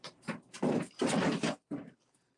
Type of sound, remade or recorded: remade